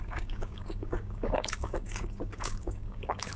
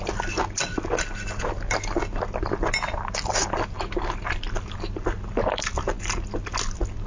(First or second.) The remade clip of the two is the first